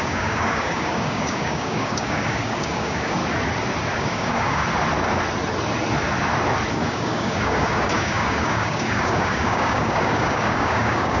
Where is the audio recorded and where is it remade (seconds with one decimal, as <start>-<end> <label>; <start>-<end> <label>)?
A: 0.0-3.2 remade; 3.2-4.0 recorded; 4.0-4.6 remade; 4.6-6.7 recorded; 6.7-11.2 remade